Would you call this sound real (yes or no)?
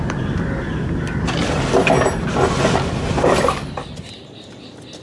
yes